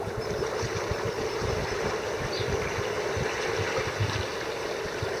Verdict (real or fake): real